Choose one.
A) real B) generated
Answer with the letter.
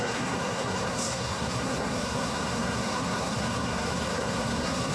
B